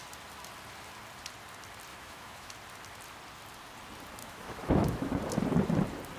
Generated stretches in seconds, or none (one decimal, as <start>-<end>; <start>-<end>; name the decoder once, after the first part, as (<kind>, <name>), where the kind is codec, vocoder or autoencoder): 1.9-2.5 (autoencoder, DAC-VAE); 4.2-5.1